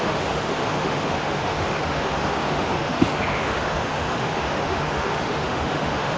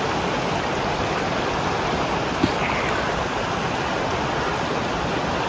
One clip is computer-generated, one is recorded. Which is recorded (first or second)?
second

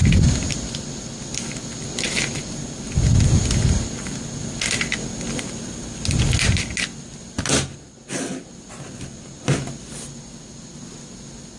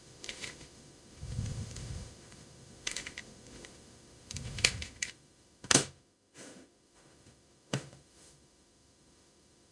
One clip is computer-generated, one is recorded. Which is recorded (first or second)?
first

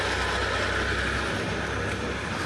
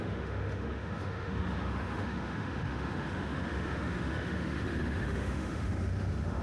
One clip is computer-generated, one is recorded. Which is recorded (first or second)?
first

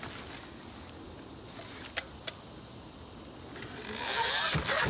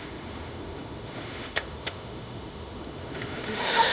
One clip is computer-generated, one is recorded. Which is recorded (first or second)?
first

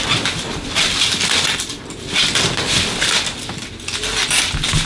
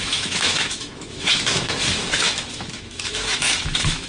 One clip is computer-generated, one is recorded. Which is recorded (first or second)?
first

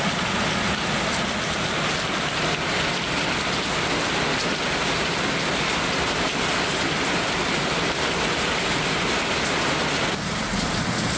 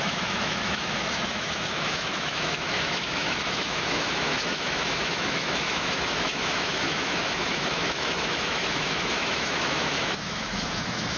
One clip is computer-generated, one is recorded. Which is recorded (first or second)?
first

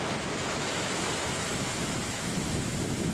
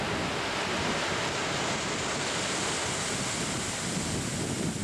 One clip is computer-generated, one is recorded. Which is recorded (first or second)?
second